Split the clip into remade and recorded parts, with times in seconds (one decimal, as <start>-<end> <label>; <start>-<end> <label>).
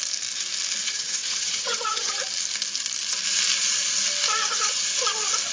0.0-0.8 recorded; 0.8-2.2 remade; 2.2-4.4 recorded; 4.4-4.9 remade; 4.9-5.5 recorded